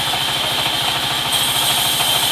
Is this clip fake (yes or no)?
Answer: no